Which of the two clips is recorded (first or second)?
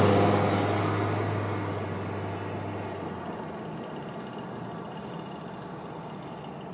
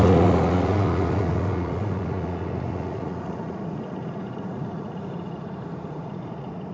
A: first